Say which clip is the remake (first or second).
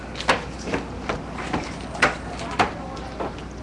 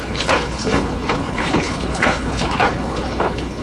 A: second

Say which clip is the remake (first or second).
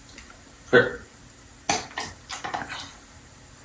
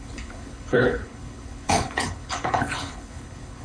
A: second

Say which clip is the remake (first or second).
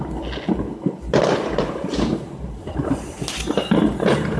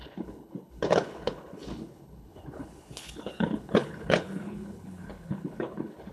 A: second